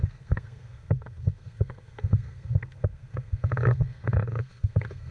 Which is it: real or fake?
fake